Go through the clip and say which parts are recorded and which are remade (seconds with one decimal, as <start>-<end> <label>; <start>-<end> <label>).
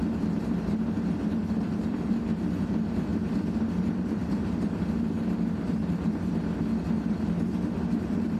0.0-3.1 remade; 3.1-3.8 recorded; 3.8-8.4 remade